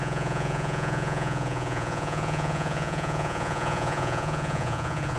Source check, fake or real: fake